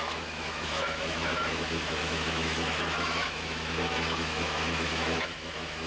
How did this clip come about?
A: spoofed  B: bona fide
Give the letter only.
A